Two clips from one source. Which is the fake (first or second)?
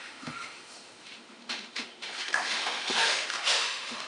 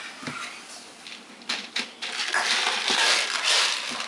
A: first